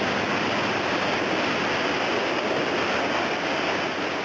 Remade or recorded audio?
recorded